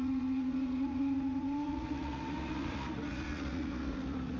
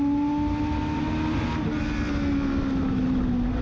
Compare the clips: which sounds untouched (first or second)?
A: second